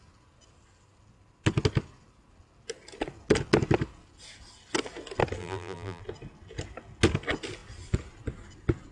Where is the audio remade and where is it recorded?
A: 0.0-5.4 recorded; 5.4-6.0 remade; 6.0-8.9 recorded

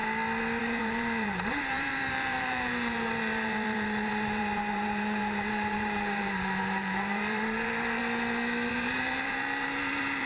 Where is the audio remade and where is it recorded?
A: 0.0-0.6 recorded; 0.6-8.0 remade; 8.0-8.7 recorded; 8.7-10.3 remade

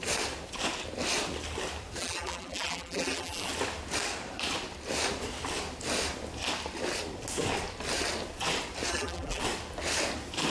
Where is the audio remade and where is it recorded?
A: 0.0-2.0 recorded; 2.0-3.5 remade; 3.5-8.9 recorded; 8.9-9.4 remade; 9.4-10.5 recorded

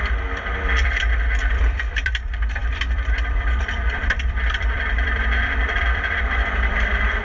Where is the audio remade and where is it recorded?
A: 0.0-7.2 remade